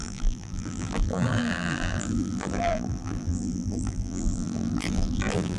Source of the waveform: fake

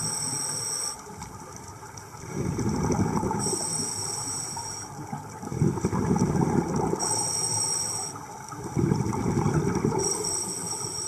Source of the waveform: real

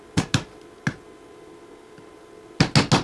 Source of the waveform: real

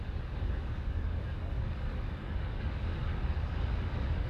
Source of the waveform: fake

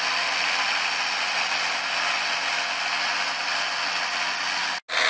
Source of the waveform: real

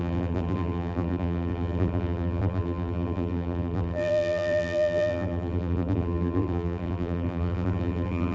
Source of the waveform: fake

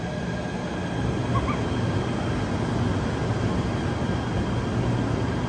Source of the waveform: real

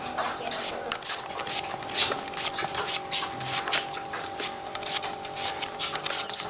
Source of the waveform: real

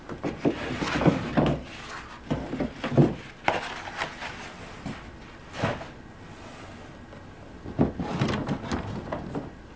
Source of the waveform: real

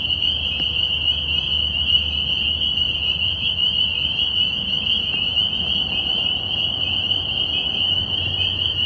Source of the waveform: real